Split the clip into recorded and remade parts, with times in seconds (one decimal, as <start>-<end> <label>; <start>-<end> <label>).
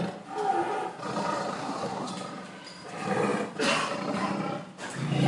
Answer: 0.0-1.5 recorded; 1.5-2.1 remade; 2.1-5.3 recorded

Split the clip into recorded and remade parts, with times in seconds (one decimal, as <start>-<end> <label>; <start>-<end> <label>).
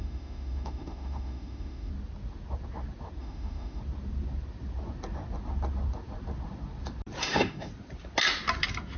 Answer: 0.0-1.9 remade; 1.9-3.2 recorded; 3.2-3.8 remade; 3.8-7.2 recorded; 7.2-7.7 remade; 7.7-9.0 recorded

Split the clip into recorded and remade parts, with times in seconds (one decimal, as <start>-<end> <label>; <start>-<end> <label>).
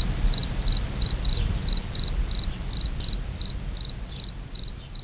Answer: 0.0-5.0 recorded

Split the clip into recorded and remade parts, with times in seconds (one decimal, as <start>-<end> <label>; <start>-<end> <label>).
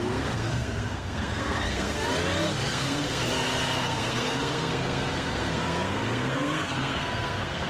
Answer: 0.0-2.1 remade; 2.1-2.7 recorded; 2.7-3.2 remade; 3.2-3.8 recorded; 3.8-7.7 remade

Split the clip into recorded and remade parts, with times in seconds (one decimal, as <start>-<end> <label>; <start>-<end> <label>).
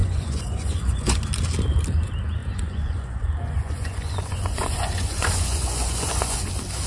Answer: 0.0-1.2 remade; 1.2-2.4 recorded; 2.4-6.5 remade; 6.5-6.9 recorded